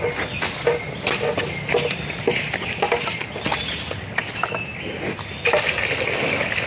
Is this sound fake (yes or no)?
no